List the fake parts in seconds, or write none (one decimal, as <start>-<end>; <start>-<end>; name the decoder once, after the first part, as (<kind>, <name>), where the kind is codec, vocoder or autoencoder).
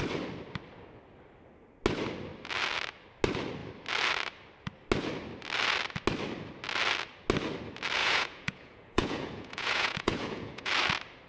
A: 8.0-10.7 (vocoder, Vocos)